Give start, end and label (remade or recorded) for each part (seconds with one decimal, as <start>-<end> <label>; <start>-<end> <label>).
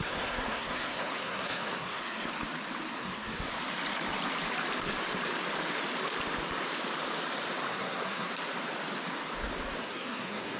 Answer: 0.0-2.3 remade; 2.3-2.9 recorded; 2.9-3.5 remade; 3.5-7.7 recorded; 7.7-8.3 remade; 8.3-9.8 recorded; 9.8-10.6 remade